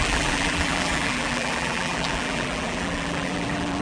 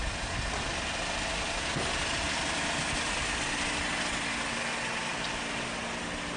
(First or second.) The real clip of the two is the second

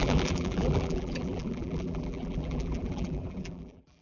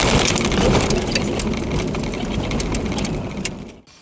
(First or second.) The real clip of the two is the second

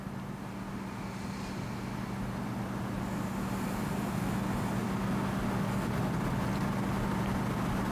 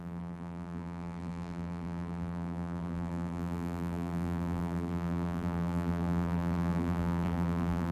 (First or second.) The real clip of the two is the first